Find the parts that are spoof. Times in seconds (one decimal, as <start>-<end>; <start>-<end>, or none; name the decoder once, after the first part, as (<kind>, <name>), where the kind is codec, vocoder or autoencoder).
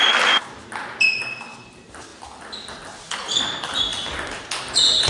none